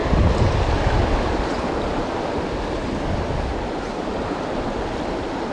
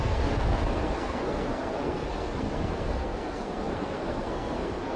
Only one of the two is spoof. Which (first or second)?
second